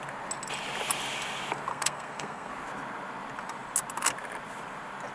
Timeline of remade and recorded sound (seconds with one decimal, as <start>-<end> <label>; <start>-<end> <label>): 0.0-1.7 recorded; 1.7-2.5 remade; 2.5-5.1 recorded